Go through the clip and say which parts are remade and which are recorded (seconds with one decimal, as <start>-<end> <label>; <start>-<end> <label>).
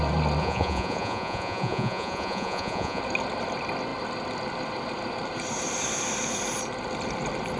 0.0-0.4 recorded; 0.4-3.0 remade; 3.0-7.6 recorded